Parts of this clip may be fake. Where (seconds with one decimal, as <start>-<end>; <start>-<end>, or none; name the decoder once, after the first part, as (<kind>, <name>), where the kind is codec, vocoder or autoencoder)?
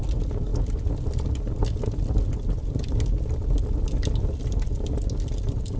none